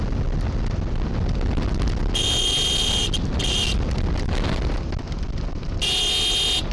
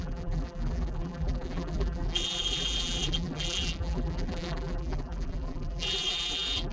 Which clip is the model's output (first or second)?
second